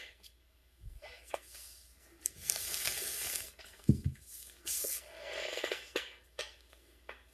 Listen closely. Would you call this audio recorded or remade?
remade